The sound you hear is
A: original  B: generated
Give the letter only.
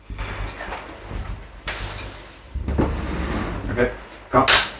A